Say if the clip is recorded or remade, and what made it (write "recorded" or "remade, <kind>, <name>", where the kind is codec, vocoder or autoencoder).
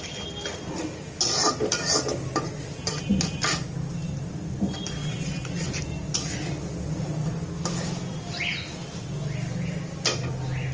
recorded